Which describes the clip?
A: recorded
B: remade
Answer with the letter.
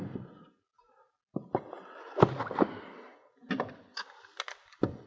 A